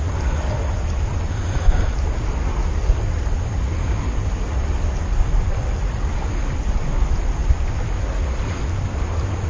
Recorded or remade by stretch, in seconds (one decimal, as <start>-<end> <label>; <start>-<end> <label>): 0.0-9.5 recorded